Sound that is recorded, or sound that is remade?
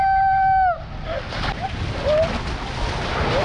recorded